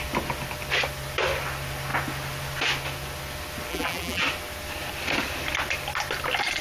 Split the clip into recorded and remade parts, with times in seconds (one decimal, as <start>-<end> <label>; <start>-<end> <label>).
0.0-3.7 recorded; 3.7-4.2 remade; 4.2-6.6 recorded